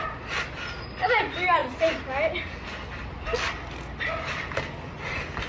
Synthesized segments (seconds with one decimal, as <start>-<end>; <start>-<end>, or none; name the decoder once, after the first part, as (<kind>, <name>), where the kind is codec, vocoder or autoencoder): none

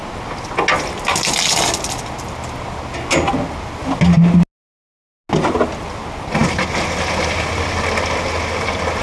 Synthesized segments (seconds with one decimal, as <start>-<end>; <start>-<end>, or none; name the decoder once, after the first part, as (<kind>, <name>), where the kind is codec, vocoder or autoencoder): none

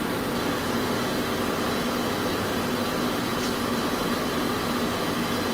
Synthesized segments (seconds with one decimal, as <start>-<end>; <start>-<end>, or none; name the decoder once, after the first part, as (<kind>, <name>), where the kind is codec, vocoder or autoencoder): 3.3-3.8 (vocoder, BigVGAN v2)

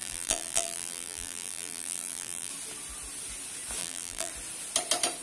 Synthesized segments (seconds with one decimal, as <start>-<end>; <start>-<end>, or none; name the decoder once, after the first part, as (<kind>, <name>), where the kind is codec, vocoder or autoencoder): 0.0-2.5 (vocoder, BigVGAN v2); 3.8-4.3